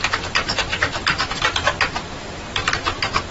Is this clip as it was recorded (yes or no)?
no